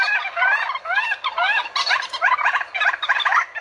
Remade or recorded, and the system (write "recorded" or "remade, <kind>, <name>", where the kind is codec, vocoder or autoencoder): recorded